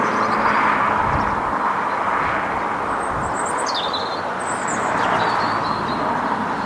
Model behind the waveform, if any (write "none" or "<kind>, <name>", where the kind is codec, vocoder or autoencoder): none